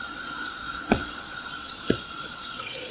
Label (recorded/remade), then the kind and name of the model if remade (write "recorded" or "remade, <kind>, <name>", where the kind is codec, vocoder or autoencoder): remade, vocoder, Vocos